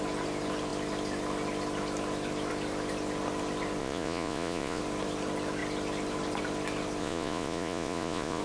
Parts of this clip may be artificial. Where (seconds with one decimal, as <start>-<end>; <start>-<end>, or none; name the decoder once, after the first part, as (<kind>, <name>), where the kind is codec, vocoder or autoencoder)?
3.8-4.8 (vocoder, Vocos); 7.0-8.4